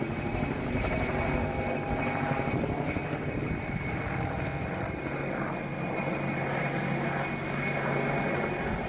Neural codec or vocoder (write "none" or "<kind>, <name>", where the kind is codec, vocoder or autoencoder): none